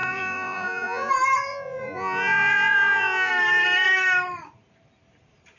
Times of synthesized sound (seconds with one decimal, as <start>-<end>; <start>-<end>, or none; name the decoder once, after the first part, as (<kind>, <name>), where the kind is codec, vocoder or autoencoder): 0.0-1.1 (vocoder, Vocos); 1.5-3.3